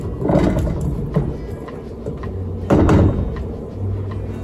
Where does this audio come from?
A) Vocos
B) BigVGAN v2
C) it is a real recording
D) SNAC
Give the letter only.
C